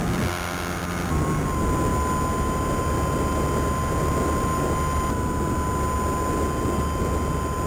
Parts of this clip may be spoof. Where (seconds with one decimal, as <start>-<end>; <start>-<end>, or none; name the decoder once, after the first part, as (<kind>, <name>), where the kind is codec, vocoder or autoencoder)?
none

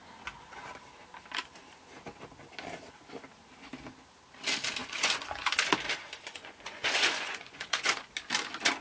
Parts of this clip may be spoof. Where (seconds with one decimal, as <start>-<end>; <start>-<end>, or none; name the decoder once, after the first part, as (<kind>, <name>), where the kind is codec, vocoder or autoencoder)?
4.8-5.7 (vocoder, Vocos); 6.3-8.1

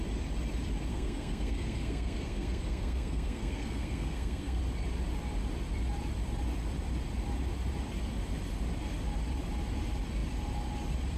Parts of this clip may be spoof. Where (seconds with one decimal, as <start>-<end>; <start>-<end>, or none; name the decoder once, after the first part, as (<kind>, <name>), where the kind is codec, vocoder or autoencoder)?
0.9-4.6 (codec, SNAC)

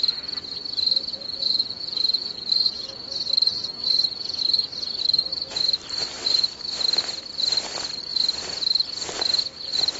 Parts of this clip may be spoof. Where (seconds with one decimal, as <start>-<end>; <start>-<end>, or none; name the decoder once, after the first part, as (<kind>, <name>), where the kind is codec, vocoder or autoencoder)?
1.1-2.5 (vocoder, Vocos)